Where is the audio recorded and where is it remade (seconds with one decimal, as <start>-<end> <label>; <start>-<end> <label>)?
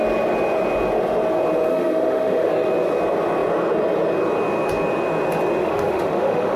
0.0-1.7 recorded; 1.7-2.5 remade; 2.5-5.6 recorded; 5.6-6.6 remade